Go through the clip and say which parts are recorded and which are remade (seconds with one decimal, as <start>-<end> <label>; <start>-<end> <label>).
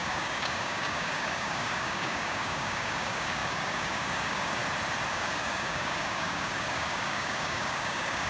0.0-4.6 remade; 4.6-5.1 recorded; 5.1-8.3 remade